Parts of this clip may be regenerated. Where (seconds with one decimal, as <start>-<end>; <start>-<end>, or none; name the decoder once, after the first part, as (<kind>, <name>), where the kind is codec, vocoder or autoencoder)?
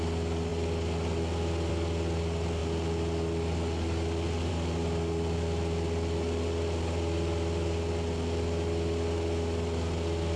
none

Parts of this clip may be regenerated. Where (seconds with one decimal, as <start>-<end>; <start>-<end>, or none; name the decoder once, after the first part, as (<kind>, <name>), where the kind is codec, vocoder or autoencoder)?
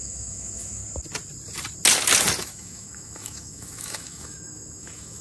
0.0-0.8 (autoencoder, DAC-VAE); 2.4-5.2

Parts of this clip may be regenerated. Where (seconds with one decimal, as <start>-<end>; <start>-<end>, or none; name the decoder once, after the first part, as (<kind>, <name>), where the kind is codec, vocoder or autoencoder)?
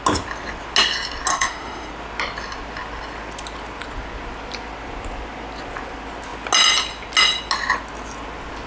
1.3-1.9 (autoencoder, DAC-VAE)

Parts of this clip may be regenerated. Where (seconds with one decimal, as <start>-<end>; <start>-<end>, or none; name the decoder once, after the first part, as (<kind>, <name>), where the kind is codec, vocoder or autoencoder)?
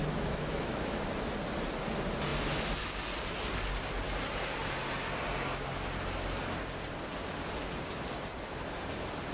0.0-1.0 (autoencoder, DAC-VAE)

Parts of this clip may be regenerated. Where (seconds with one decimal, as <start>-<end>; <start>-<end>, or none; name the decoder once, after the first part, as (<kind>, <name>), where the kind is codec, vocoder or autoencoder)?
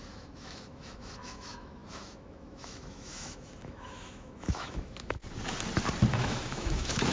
0.0-5.2 (autoencoder, DAC-VAE); 6.1-7.1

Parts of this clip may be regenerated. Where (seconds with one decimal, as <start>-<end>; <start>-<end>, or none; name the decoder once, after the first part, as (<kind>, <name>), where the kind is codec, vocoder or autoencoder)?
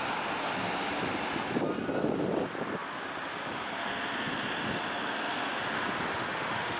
6.1-6.8 (autoencoder, DAC-VAE)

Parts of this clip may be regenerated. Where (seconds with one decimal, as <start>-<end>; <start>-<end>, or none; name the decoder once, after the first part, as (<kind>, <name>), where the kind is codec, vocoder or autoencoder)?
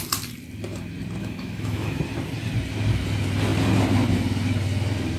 1.2-2.0 (autoencoder, DAC-VAE)